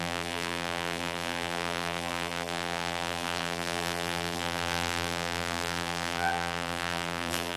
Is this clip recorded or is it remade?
remade